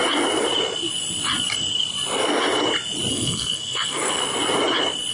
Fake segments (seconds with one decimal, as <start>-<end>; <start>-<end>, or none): 3.1-4.2